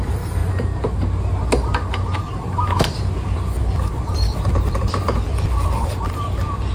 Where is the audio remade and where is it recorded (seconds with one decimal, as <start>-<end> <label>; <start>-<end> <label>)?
0.0-0.4 remade; 0.4-4.4 recorded; 4.4-6.7 remade